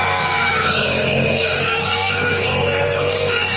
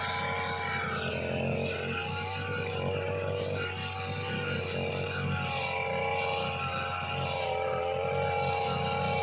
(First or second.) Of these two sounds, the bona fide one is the second